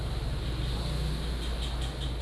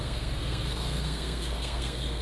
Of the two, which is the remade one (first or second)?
second